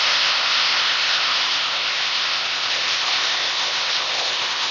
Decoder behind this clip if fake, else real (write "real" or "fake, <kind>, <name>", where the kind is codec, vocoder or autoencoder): fake, codec, ZipCodec